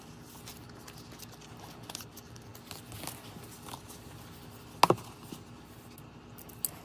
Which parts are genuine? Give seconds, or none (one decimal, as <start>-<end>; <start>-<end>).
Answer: 0.0-6.8